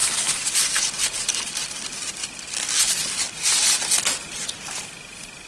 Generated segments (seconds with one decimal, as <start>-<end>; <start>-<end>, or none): none